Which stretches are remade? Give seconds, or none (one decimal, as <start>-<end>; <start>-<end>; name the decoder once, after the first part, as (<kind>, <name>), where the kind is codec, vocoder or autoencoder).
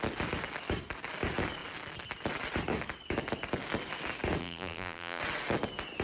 4.4-5.2 (vocoder, BigVGAN v2)